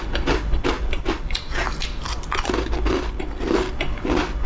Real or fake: real